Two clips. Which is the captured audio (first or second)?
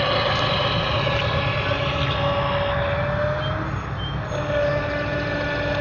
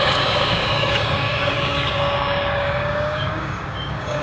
first